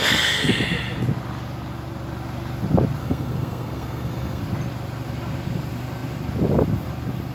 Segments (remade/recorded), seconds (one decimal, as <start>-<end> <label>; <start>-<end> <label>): 0.0-0.6 remade; 0.6-3.0 recorded; 3.0-4.4 remade; 4.4-7.3 recorded